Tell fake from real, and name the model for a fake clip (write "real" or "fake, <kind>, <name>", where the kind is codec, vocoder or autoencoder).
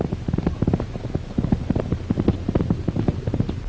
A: real